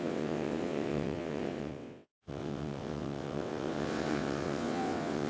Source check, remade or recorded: remade